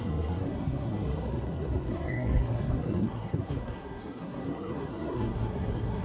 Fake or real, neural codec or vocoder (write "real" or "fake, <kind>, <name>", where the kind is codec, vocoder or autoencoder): fake, codec, SNAC